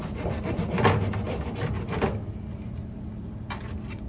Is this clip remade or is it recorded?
recorded